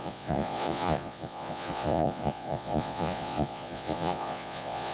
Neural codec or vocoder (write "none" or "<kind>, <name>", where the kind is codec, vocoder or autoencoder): vocoder, Vocos